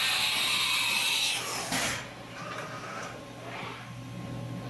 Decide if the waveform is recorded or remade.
recorded